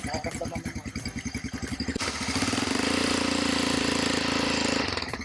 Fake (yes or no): no